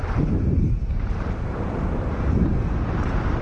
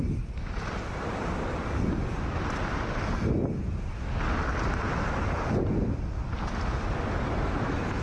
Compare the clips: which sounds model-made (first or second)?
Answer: first